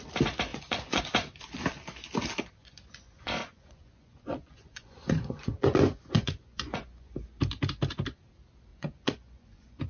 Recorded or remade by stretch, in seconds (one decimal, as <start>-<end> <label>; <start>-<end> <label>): 0.0-0.5 recorded; 0.5-1.0 remade; 1.0-2.6 recorded; 2.6-7.1 remade; 7.1-8.7 recorded; 8.7-9.9 remade